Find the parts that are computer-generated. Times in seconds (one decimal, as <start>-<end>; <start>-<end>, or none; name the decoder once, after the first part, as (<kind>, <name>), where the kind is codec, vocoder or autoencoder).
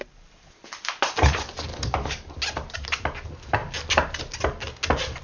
1.7-2.3 (codec, DAC)